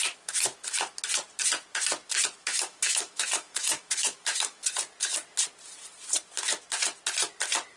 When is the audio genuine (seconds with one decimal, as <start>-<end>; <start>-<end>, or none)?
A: 0.5-2.4; 4.6-7.8